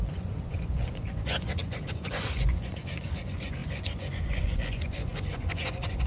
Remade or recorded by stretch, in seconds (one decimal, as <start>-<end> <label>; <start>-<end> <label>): 0.0-6.1 remade